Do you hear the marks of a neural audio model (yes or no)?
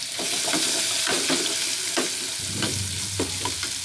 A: no